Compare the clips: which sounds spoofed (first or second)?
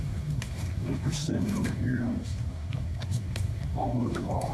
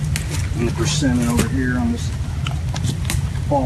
first